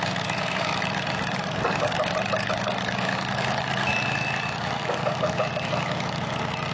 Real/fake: fake